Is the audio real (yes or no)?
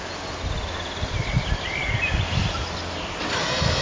yes